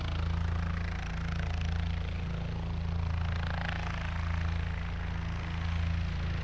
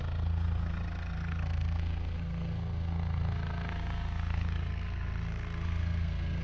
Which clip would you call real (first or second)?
first